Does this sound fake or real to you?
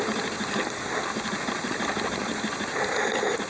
real